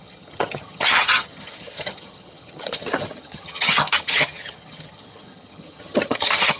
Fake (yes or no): yes